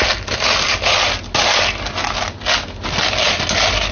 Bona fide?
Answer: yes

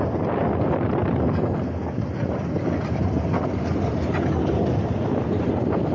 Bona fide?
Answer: yes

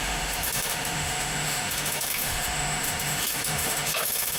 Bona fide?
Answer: no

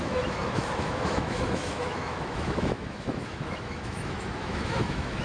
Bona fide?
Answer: no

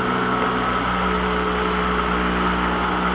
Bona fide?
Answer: yes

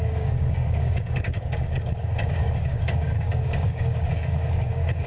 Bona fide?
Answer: no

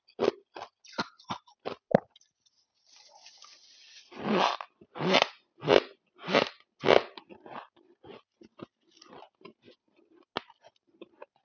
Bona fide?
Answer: yes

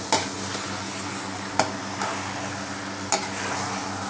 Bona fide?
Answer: yes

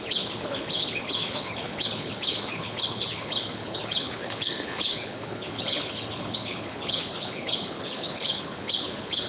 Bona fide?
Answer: no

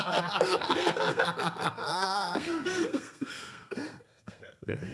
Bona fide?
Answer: no